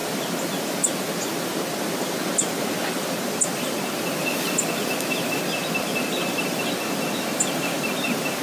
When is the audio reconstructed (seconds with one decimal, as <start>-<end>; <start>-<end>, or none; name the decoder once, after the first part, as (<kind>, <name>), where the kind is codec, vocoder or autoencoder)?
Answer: none